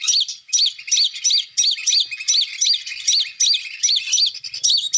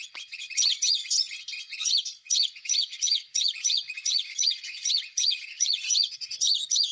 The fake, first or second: second